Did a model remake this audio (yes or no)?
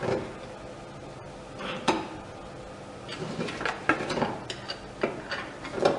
no